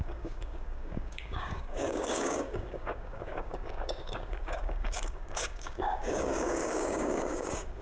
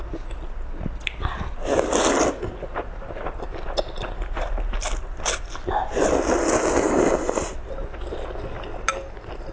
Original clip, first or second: second